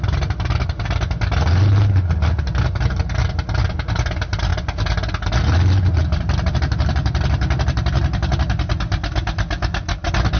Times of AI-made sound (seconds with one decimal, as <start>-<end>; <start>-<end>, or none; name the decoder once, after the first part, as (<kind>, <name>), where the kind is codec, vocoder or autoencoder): none